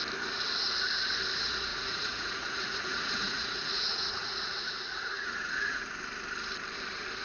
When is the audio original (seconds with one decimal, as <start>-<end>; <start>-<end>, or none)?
0.0-1.7; 5.9-7.2

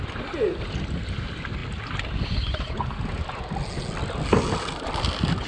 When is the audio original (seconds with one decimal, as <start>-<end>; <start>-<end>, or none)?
0.0-5.5